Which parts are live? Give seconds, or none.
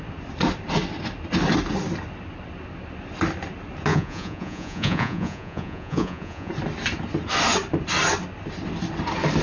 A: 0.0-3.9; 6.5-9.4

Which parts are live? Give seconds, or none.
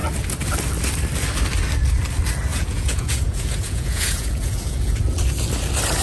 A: 0.0-2.5; 5.1-6.0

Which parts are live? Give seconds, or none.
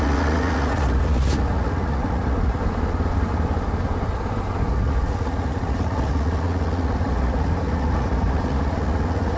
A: 2.6-4.7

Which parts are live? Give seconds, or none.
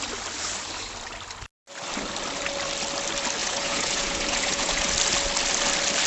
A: 0.0-3.4; 4.9-6.1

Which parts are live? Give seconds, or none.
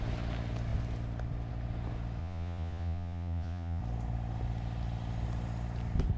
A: 0.0-2.2; 3.8-6.2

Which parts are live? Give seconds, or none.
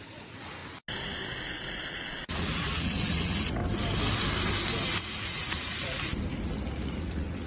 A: 0.6-1.9; 3.6-5.0; 6.1-6.7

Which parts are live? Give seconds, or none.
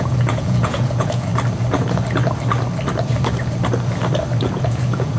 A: 1.3-4.4